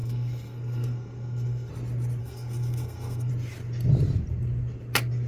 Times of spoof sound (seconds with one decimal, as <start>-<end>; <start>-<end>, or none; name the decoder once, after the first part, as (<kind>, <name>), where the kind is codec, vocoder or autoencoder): 0.0-1.7 (codec, SNAC); 2.2-3.3